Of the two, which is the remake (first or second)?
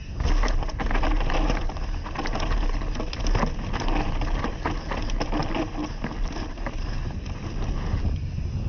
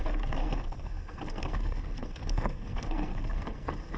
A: second